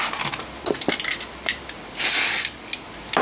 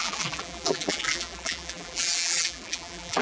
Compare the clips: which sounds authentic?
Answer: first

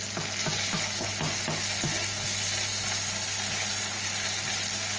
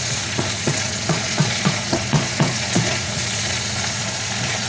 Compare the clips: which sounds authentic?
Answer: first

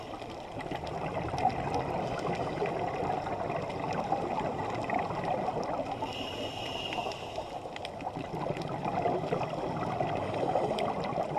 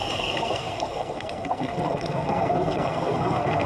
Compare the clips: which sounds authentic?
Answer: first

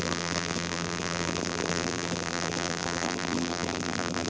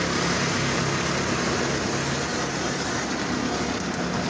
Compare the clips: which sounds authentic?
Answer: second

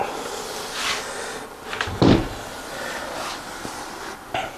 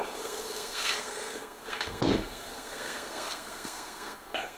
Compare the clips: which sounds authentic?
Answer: first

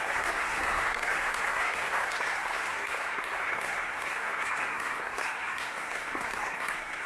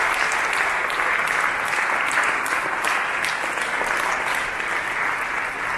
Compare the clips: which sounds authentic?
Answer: second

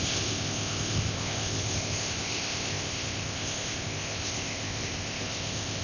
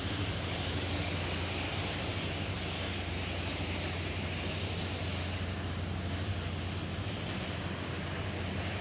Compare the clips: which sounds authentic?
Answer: second